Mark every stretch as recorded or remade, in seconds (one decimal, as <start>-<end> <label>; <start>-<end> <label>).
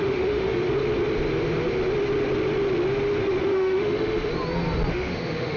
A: 0.0-0.6 remade; 0.6-3.4 recorded; 3.4-4.3 remade; 4.3-4.9 recorded; 4.9-5.6 remade